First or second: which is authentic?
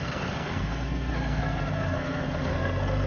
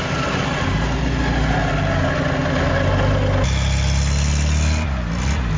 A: second